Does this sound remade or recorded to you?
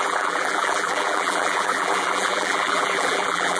remade